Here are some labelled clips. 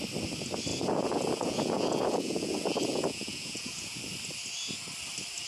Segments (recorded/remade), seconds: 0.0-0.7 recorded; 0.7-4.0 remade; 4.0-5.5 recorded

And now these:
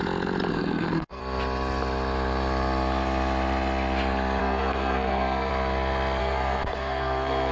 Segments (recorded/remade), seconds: 0.0-0.5 recorded; 0.5-1.2 remade; 1.2-4.4 recorded; 4.4-5.5 remade; 5.5-6.2 recorded; 6.2-7.5 remade

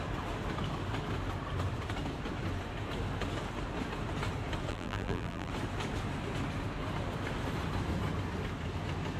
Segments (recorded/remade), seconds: 0.0-4.7 recorded; 4.7-5.5 remade; 5.5-9.2 recorded

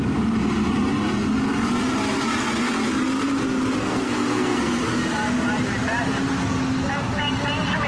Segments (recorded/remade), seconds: 0.0-3.8 recorded; 3.8-4.8 remade; 4.8-7.9 recorded

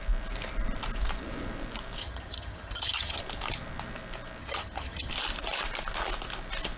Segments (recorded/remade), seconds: 0.0-2.0 recorded; 2.0-3.2 remade; 3.2-4.4 recorded; 4.4-5.1 remade; 5.1-6.8 recorded